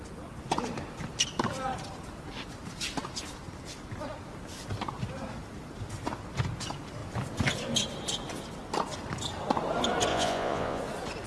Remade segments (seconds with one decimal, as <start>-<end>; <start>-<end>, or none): 10.1-10.8